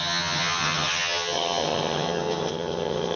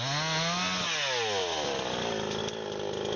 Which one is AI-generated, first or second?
first